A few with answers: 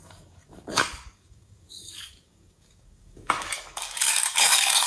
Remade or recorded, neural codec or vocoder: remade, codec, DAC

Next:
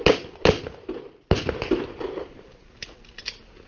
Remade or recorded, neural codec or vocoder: recorded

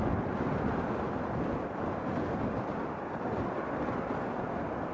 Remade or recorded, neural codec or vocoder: recorded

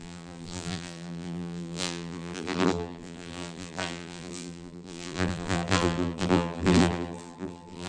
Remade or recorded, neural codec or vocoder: remade, vocoder, BigVGAN v2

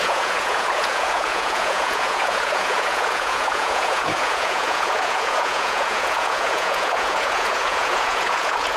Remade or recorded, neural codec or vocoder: remade, vocoder, Vocos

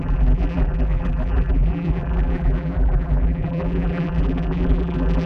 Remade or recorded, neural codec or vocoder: remade, vocoder, BigVGAN v2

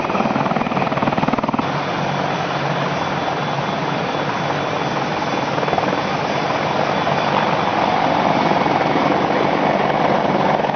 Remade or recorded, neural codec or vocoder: recorded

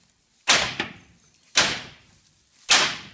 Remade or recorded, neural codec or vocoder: recorded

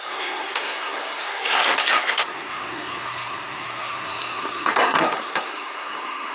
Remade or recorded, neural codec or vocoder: remade, codec, SNAC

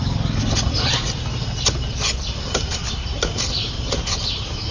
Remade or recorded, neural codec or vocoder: recorded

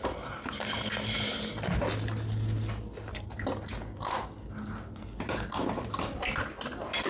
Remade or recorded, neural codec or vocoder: recorded